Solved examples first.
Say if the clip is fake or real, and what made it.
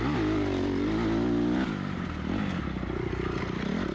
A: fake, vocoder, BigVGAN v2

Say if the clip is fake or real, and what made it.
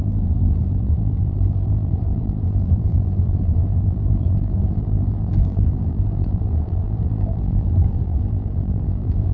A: fake, vocoder, BigVGAN v2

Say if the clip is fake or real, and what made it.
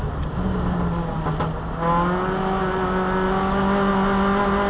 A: real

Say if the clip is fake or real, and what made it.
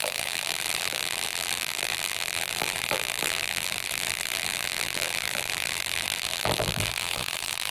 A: fake, vocoder, BigVGAN v2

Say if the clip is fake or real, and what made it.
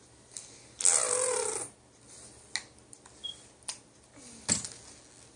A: real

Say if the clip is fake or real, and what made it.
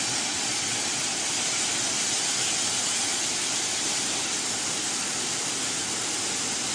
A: real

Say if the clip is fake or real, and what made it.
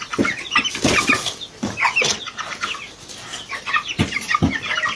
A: real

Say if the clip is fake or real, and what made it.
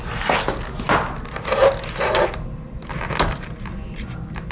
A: real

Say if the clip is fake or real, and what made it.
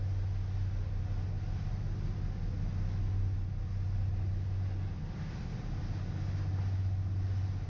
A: real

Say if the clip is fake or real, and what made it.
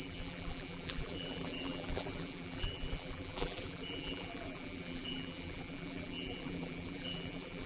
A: fake, vocoder, BigVGAN v2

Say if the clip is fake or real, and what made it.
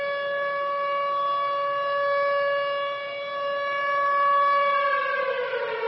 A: real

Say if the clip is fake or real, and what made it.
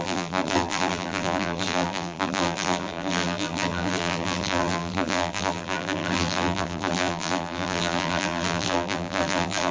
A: fake, vocoder, BigVGAN v2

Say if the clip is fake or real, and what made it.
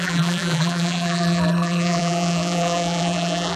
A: fake, vocoder, BigVGAN v2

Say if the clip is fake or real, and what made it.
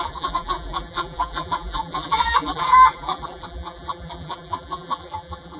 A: fake, vocoder, BigVGAN v2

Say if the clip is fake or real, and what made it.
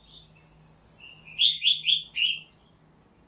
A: real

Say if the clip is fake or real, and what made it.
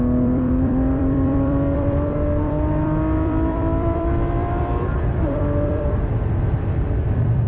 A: fake, vocoder, BigVGAN v2